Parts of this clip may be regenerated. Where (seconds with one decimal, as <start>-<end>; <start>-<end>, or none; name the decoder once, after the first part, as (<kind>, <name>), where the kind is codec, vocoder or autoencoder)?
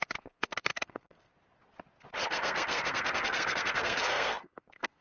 0.0-1.3 (codec, SNAC); 2.3-5.0